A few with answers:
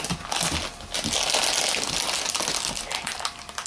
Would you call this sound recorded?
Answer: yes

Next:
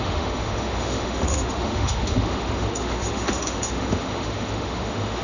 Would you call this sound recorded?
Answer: no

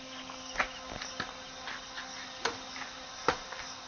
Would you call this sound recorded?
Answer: yes